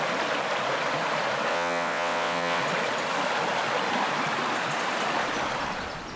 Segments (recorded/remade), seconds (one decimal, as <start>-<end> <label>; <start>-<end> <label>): 0.0-1.5 recorded; 1.5-2.6 remade; 2.6-6.2 recorded